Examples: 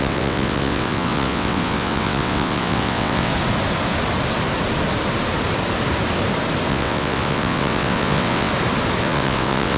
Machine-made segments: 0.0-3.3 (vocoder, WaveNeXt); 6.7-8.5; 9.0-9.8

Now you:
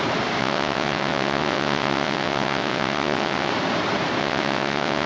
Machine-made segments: 0.4-3.5 (vocoder, WaveNeXt); 4.2-5.1

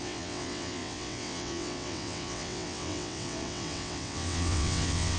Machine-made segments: 0.0-5.2 (vocoder, WaveNeXt)

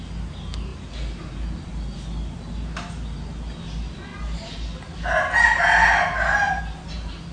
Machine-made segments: none

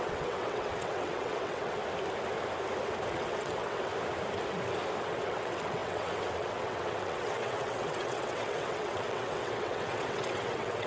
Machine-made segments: 0.0-1.8 (vocoder, WaveNeXt); 3.1-3.9; 5.0-10.9

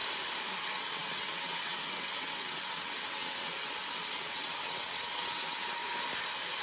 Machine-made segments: 0.6-5.8 (vocoder, WaveNeXt)

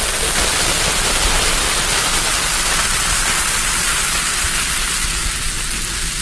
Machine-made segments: none

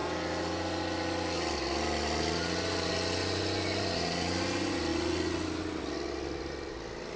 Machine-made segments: none